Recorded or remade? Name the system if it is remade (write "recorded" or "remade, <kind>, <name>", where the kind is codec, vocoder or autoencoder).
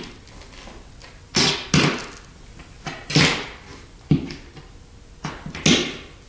recorded